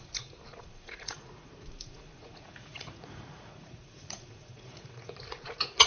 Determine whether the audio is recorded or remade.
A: remade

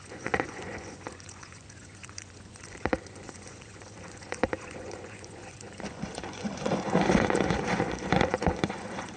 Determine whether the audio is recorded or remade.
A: remade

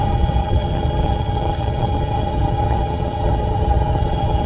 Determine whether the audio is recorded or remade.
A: remade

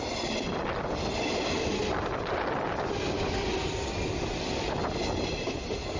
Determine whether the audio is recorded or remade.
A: recorded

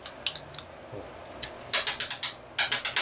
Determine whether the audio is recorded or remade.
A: recorded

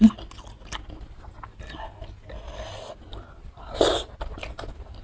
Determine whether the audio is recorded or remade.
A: recorded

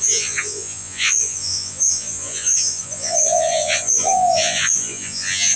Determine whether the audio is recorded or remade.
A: remade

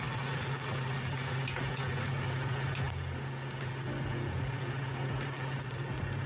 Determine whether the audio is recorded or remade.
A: recorded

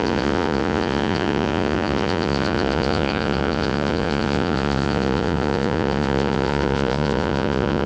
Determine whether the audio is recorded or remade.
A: remade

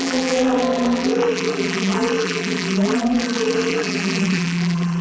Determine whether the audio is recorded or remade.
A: remade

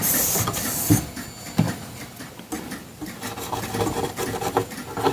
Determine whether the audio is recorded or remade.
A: recorded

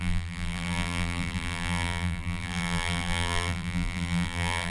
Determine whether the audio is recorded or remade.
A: remade